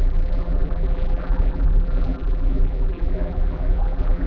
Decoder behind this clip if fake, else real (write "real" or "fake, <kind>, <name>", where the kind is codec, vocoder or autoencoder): fake, vocoder, BigVGAN v2